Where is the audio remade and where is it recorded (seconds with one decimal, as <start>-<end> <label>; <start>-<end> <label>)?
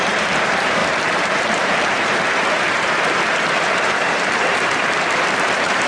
0.0-5.9 remade